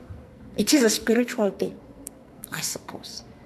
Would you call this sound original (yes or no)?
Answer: no